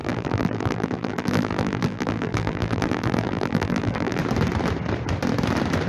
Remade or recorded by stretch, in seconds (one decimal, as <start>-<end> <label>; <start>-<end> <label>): 0.0-4.2 remade; 4.2-5.9 recorded